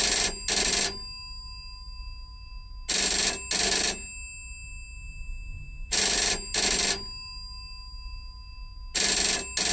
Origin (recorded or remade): recorded